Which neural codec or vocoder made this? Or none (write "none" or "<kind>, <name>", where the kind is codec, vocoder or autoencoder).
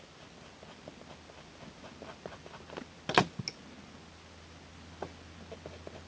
none